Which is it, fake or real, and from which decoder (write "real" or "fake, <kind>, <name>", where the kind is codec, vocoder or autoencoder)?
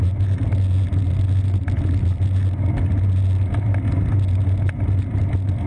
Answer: real